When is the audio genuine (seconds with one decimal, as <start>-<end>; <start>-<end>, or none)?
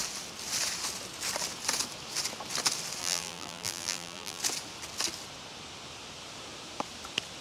0.0-3.0; 4.4-7.4